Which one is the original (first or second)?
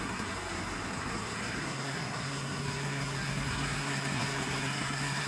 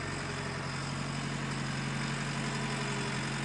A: second